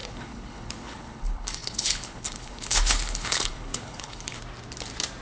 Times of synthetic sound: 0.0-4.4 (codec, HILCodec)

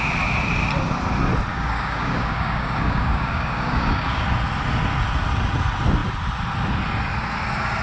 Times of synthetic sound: 1.5-4.2 (codec, DAC)

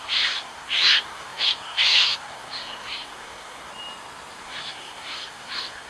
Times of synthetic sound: 0.0-3.7 (codec, SNAC); 4.4-5.9

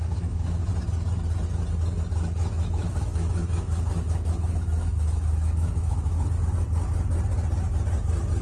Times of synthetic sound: 0.0-0.7 (autoencoder, DAC-VAE); 2.4-6.3

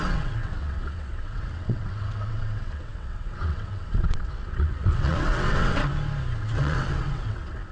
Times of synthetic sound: 0.0-5.9 (vocoder, WaveNeXt); 6.4-7.7

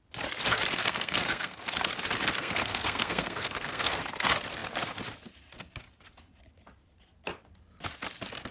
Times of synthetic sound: 0.8-1.6 (codec, SNAC); 2.4-4.0

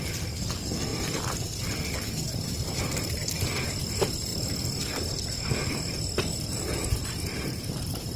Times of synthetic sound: none